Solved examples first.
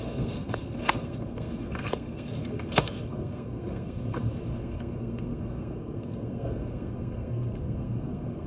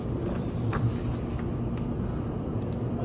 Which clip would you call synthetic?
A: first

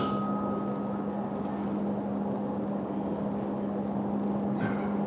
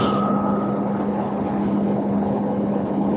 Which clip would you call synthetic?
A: second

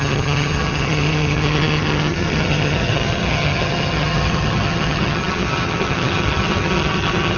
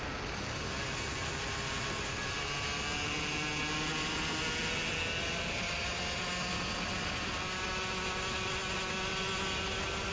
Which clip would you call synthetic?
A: first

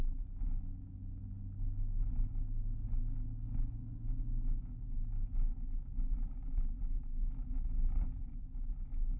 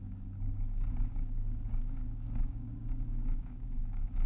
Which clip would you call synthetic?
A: second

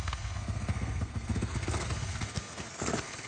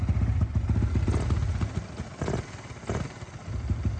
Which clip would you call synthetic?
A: first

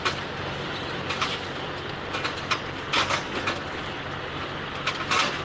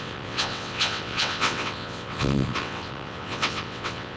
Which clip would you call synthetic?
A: second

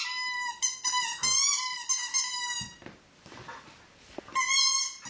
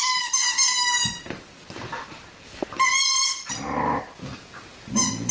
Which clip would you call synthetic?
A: second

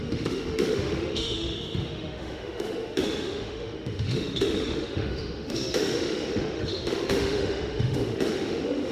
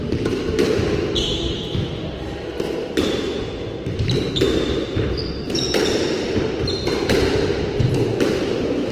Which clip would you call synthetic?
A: first